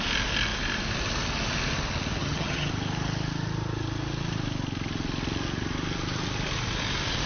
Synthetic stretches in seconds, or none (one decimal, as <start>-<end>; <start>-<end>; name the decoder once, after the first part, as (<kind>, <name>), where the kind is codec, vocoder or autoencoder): 2.2-2.7 (vocoder, HiFi-GAN)